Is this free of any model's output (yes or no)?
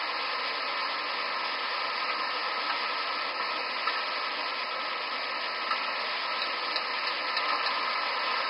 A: yes